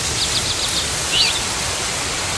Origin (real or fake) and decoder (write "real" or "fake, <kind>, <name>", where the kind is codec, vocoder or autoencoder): real